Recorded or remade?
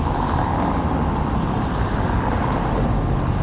recorded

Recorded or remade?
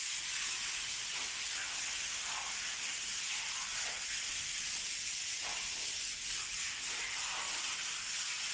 recorded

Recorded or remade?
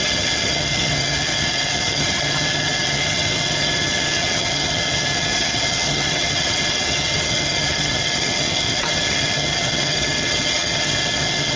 remade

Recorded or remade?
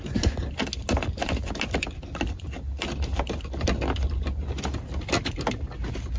recorded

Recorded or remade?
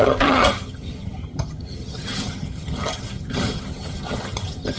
remade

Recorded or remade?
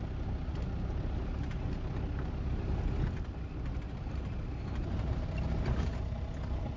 recorded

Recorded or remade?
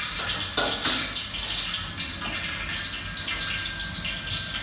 recorded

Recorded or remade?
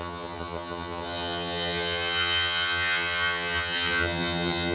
remade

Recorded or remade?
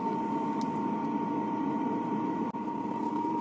recorded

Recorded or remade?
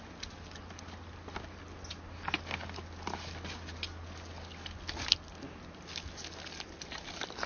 recorded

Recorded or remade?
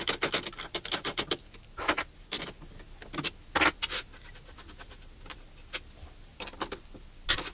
recorded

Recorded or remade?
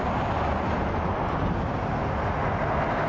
recorded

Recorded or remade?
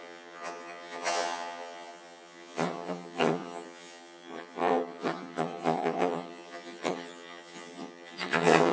remade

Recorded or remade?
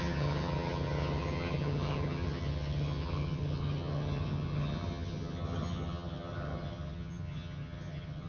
remade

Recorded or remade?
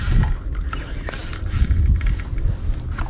recorded